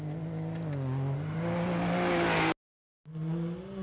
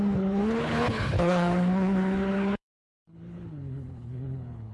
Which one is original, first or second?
first